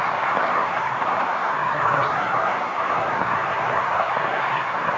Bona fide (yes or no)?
no